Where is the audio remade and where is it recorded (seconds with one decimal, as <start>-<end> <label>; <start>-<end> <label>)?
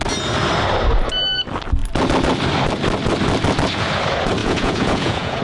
0.0-4.4 recorded; 4.4-5.4 remade